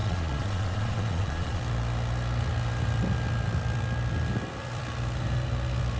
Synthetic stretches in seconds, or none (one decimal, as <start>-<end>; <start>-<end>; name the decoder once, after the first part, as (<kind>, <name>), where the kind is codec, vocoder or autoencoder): 0.0-1.6 (vocoder, Vocos)